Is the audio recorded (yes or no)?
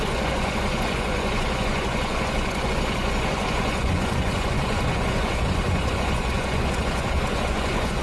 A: no